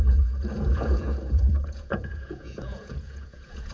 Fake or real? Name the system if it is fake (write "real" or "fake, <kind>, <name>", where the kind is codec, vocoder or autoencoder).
fake, vocoder, Vocos